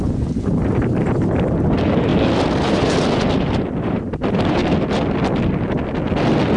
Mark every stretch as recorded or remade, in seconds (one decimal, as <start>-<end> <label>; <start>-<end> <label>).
0.0-2.1 remade; 2.1-3.8 recorded; 3.8-4.6 remade; 4.6-6.6 recorded